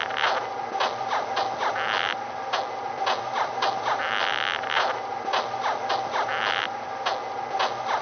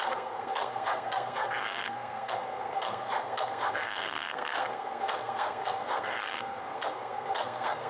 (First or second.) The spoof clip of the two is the second